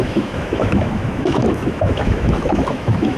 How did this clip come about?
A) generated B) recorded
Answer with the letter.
A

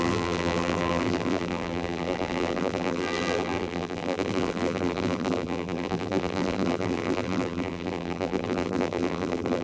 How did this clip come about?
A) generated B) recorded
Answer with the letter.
A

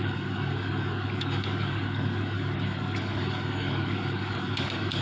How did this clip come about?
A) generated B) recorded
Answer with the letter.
A